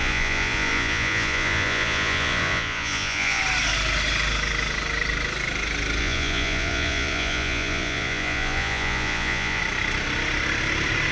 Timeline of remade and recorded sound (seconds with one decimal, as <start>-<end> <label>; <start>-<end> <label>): 0.0-3.4 remade; 3.4-6.0 recorded; 6.0-9.6 remade; 9.6-11.1 recorded